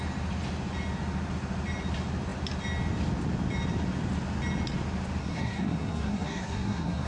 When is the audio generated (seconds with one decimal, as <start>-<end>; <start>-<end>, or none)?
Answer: 5.2-7.1